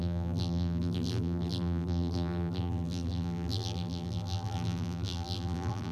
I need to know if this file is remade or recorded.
remade